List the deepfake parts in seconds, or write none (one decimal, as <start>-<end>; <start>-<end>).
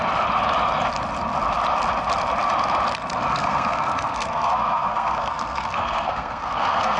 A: 3.3-7.0